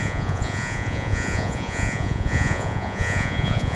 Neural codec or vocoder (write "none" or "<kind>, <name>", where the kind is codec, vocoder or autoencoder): vocoder, Vocos